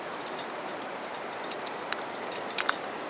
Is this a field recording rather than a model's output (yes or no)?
no